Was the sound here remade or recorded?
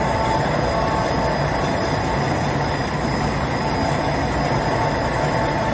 recorded